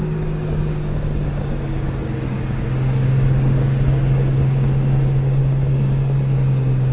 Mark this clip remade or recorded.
remade